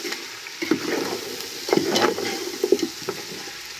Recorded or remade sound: recorded